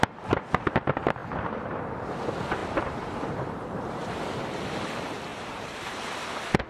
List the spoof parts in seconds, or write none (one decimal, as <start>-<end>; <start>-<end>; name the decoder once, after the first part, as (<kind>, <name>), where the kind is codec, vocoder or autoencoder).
1.2-1.8 (vocoder, BigVGAN v2); 2.6-4.2; 5.3-6.1